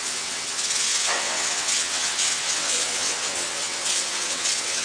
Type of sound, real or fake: fake